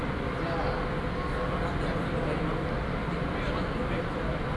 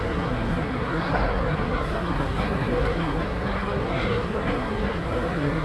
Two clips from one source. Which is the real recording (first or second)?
first